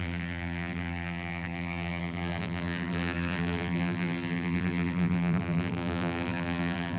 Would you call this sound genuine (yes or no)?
no